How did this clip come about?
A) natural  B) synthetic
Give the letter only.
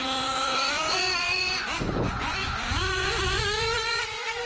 B